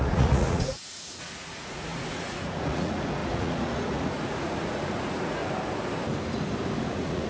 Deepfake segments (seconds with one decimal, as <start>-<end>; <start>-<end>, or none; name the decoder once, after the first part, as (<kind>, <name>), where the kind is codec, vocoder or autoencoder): 0.0-5.4 (vocoder, Vocos); 6.8-7.3